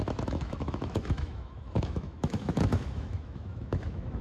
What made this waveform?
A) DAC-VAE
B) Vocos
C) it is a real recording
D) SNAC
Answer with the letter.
A